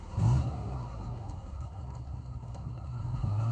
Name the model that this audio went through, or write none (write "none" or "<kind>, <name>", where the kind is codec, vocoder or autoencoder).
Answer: codec, SNAC